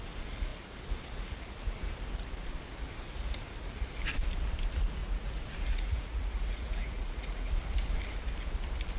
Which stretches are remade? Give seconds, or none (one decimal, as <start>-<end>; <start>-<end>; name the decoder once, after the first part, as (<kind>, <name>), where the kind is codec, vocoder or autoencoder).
5.0-7.5 (vocoder, Vocos)